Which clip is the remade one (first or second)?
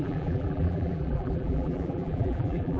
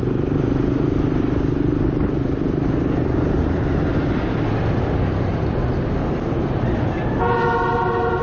first